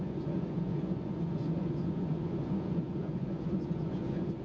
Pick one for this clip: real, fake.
fake